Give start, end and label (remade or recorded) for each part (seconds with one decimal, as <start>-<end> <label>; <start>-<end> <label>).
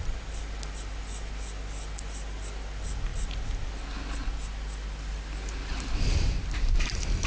0.0-7.3 recorded